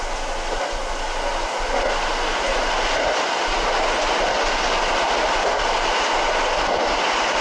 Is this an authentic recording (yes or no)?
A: yes